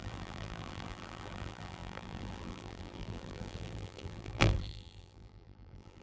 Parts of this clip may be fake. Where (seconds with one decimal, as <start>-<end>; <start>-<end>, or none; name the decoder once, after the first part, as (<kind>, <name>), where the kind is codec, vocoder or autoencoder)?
0.0-6.0 (vocoder, BigVGAN v2)